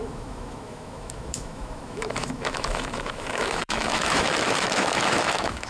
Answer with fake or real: fake